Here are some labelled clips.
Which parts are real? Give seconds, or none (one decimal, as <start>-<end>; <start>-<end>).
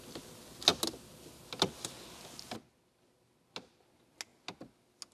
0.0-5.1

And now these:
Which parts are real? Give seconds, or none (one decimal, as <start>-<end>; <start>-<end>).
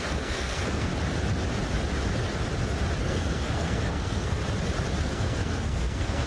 0.9-3.0; 4.4-5.0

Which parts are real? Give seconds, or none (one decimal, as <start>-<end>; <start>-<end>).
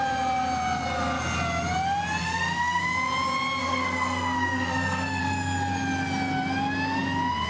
0.0-2.2; 2.8-3.6; 5.2-7.5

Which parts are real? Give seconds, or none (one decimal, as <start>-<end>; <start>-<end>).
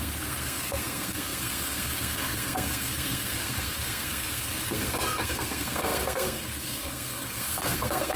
none